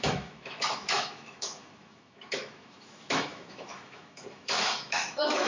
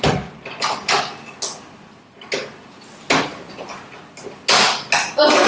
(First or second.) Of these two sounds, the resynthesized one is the first